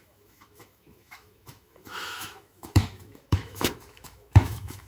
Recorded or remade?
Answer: remade